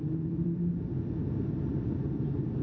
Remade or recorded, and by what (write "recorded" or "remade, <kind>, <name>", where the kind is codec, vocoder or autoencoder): recorded